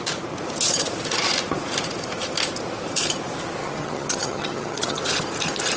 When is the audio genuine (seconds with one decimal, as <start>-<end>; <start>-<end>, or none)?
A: 0.0-3.6; 5.0-5.8